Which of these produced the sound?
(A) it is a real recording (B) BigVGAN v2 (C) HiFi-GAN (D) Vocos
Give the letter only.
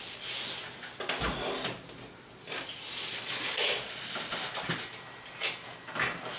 A